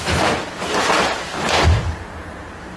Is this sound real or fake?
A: real